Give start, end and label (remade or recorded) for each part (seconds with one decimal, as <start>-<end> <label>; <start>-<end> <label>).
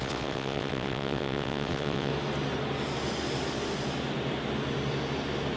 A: 0.0-2.1 remade; 2.1-5.6 recorded